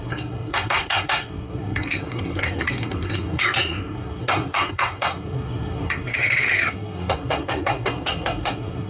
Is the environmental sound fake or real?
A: fake